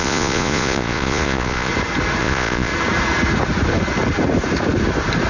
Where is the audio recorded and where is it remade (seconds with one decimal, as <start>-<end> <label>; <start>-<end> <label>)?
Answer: 0.0-1.7 remade; 1.7-2.2 recorded; 2.2-2.7 remade; 2.7-5.3 recorded